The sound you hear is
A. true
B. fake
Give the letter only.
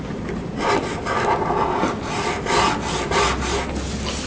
A